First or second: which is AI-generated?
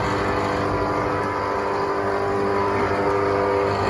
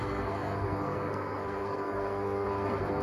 second